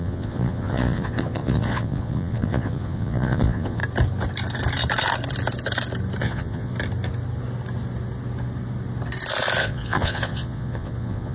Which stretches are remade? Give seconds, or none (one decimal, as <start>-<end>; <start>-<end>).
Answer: 0.0-3.8; 6.2-6.7; 9.6-11.3